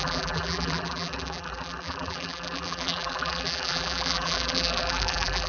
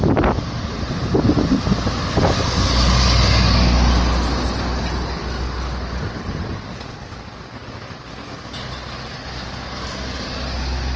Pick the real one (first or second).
second